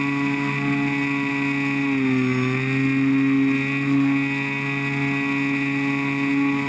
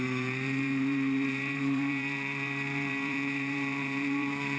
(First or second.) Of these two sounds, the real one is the first